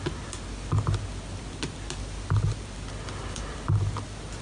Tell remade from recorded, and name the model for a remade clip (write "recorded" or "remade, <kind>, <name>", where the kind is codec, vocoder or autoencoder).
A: recorded